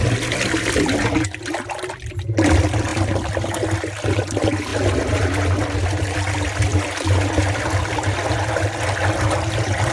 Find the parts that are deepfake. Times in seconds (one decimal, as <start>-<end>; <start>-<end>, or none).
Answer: none